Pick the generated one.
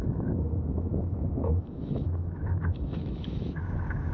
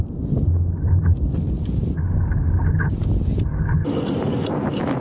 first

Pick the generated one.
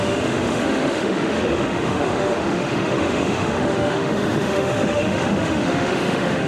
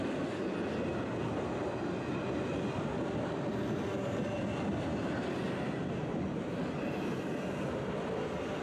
first